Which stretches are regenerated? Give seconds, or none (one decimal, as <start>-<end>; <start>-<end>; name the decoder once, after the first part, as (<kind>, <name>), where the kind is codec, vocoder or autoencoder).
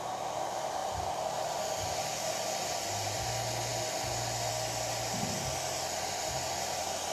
none